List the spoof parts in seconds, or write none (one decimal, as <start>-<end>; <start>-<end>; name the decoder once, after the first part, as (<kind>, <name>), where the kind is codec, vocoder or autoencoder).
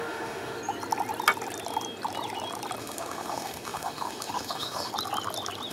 0.0-0.6 (autoencoder, DAC-VAE); 2.8-4.9